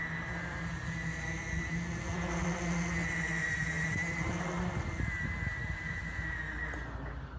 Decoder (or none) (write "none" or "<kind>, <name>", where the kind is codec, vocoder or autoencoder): none